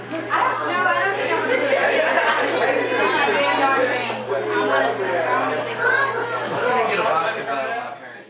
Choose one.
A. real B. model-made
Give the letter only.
A